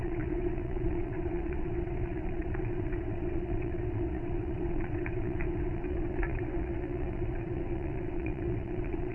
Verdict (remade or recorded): remade